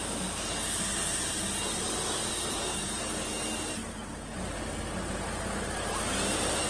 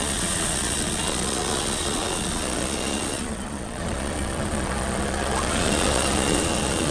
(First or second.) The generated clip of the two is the second